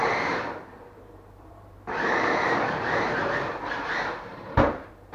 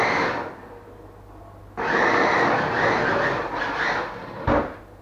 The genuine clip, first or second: second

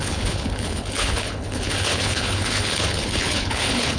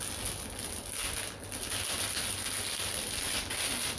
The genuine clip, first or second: second